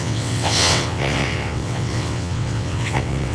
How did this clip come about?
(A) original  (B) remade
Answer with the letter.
B